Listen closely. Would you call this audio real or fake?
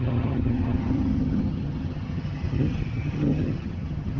fake